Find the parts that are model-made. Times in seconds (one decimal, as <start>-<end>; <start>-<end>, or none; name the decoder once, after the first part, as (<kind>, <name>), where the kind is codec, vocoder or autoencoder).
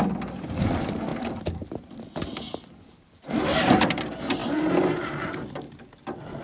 none